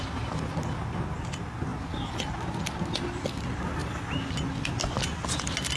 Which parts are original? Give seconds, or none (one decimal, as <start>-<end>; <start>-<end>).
0.0-5.8